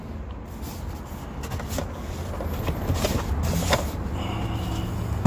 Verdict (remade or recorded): recorded